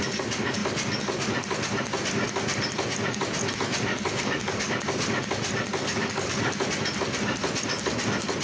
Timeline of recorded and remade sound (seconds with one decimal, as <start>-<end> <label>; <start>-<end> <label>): 0.0-3.9 recorded; 3.9-4.7 remade; 4.7-5.8 recorded; 5.8-6.7 remade; 6.7-8.4 recorded